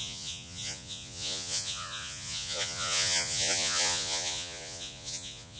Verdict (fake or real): fake